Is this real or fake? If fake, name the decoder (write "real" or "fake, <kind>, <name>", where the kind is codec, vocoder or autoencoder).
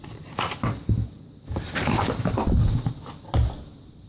real